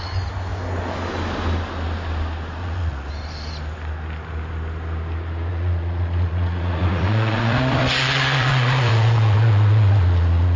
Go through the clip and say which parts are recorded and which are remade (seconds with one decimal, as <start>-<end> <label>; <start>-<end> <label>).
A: 0.0-2.6 recorded; 2.6-3.1 remade; 3.1-5.5 recorded; 5.5-10.6 remade